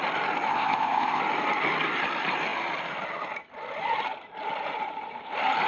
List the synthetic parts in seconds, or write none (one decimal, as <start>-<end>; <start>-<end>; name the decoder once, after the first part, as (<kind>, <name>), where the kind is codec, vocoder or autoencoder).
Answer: 0.5-1.2 (codec, ZipCodec)

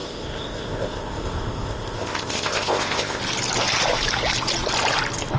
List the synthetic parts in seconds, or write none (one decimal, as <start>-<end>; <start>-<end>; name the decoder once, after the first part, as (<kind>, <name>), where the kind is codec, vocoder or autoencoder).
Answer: 0.0-3.2 (codec, ZipCodec)

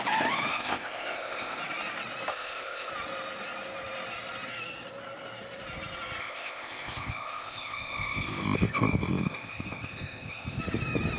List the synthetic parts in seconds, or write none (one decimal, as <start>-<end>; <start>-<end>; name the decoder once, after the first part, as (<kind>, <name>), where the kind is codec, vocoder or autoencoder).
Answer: 0.5-1.6 (codec, ZipCodec); 2.3-2.9; 6.2-10.6

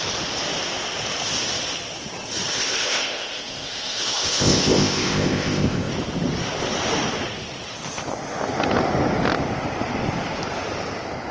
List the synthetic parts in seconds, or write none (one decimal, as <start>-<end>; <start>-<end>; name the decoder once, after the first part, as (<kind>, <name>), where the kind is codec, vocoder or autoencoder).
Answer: 2.5-5.9 (codec, ZipCodec)

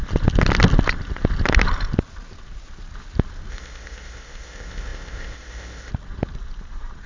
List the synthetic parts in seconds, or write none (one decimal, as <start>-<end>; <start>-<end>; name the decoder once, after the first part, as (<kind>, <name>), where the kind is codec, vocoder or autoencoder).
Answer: 3.5-5.9 (codec, ZipCodec)